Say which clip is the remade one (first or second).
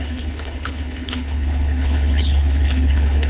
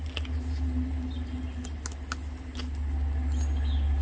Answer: first